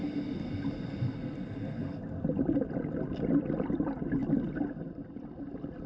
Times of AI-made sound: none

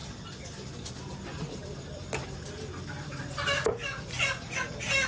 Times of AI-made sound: none

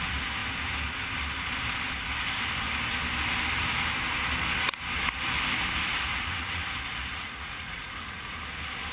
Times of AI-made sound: 6.1-6.6 (vocoder, Vocos); 7.1-8.3